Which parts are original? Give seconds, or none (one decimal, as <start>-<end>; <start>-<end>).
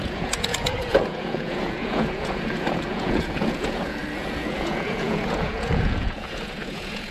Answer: none